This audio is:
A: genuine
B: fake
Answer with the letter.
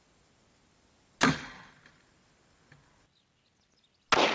A